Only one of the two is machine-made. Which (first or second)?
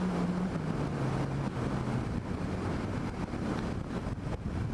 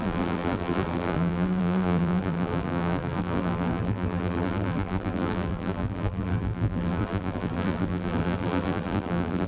second